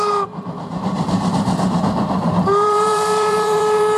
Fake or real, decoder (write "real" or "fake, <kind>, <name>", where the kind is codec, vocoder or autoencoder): fake, vocoder, BigVGAN v2